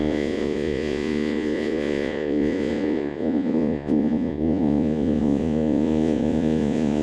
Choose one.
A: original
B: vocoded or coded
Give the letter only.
B